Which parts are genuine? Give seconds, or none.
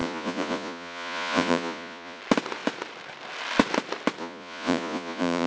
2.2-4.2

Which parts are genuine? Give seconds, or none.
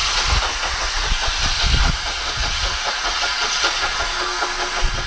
1.1-1.8; 3.3-5.1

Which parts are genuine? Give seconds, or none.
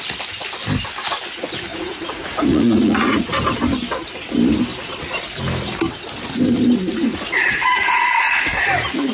0.0-1.7; 3.2-7.1; 8.6-9.1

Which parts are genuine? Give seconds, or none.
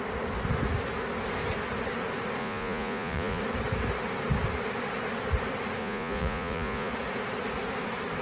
0.0-2.4; 3.4-5.8; 6.9-8.2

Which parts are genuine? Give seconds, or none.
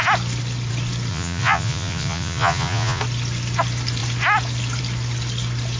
0.0-1.1; 3.0-5.8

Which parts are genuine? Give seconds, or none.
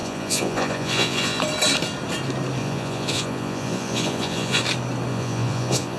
1.4-2.6; 4.6-5.1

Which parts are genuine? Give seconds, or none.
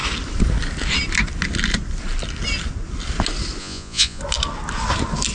0.0-3.6; 4.2-5.3